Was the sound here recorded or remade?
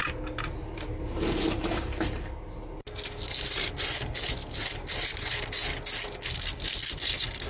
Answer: recorded